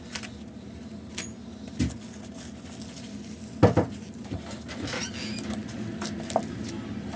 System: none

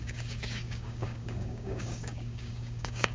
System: codec, DAC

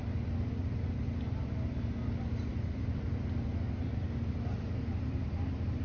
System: none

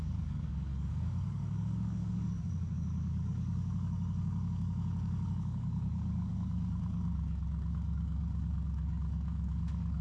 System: codec, DAC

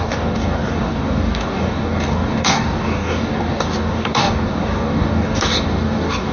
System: codec, DAC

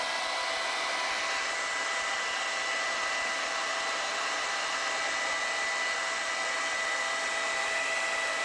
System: none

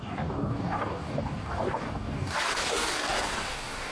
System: codec, DAC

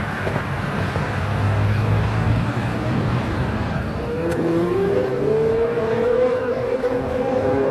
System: codec, DAC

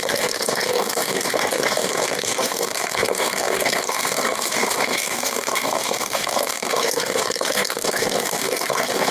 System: codec, DAC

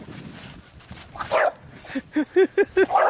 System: none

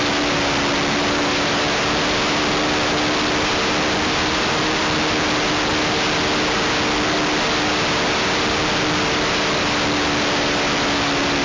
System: none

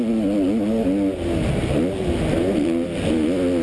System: none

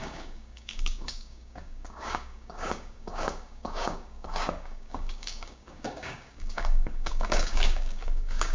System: codec, DAC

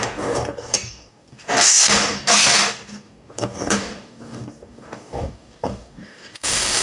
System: codec, DAC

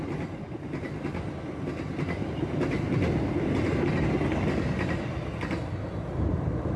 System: none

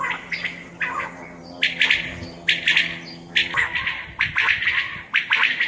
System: none